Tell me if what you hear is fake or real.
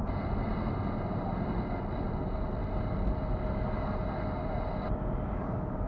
real